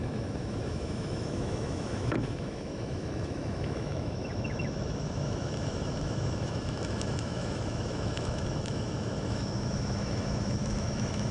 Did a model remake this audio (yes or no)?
yes